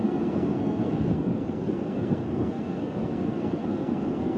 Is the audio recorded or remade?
remade